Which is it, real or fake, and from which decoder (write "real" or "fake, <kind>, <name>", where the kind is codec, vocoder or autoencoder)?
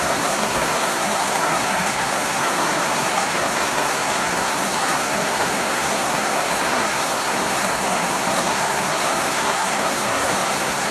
fake, codec, SNAC